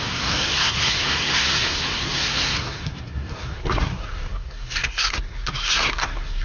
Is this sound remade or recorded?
remade